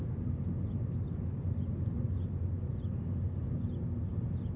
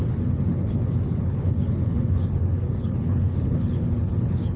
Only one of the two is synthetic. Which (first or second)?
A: second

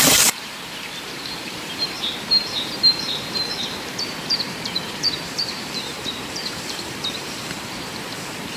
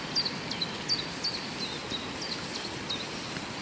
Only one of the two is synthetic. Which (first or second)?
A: first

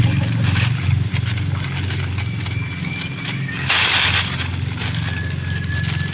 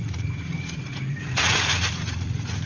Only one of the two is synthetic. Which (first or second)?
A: second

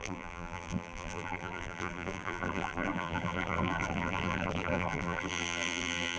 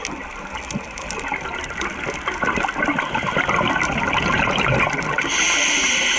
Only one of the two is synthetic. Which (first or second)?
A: first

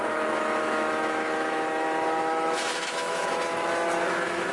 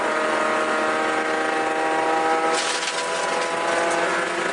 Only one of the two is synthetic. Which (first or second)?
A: first